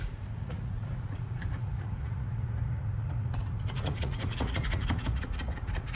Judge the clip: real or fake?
fake